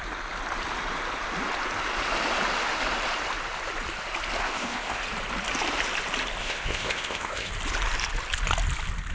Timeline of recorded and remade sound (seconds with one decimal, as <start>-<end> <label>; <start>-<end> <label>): 0.0-4.4 recorded; 4.4-5.0 remade; 5.0-6.4 recorded; 6.4-7.5 remade; 7.5-9.1 recorded